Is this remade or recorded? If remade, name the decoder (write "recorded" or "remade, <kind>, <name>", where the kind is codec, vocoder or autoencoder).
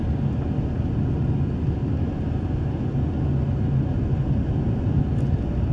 recorded